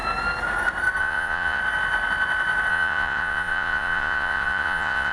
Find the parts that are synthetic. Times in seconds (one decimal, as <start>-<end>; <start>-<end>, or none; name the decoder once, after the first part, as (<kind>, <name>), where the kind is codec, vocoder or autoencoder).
1.0-1.6 (vocoder, Vocos); 2.7-5.1